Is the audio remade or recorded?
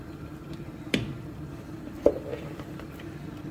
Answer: recorded